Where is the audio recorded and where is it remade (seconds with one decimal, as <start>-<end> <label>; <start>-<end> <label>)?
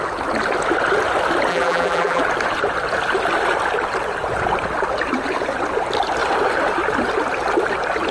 0.0-1.5 recorded; 1.5-2.2 remade; 2.2-8.1 recorded